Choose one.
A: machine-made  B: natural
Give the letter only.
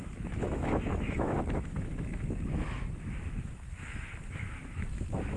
A